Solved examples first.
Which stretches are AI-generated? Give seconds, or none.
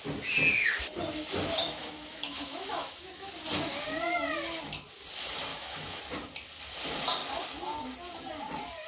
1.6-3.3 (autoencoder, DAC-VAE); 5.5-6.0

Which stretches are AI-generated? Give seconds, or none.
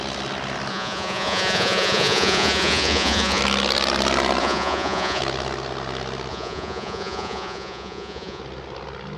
0.7-3.4 (vocoder, Vocos); 4.4-5.2; 6.3-8.4